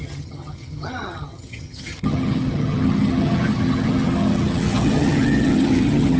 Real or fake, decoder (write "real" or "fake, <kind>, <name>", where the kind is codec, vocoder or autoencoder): fake, vocoder, HiFi-GAN